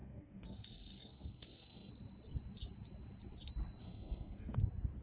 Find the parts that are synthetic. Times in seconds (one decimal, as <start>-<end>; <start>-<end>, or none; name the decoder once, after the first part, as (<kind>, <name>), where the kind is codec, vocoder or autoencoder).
0.0-1.9 (codec, SNAC); 3.8-4.6